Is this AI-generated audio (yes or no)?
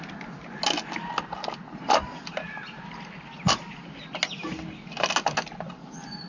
no